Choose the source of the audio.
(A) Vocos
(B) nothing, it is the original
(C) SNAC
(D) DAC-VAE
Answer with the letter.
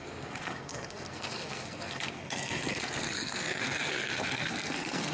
C